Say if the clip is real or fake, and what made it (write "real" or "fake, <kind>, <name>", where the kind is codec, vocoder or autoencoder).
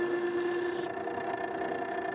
real